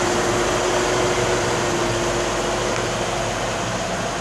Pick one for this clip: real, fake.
real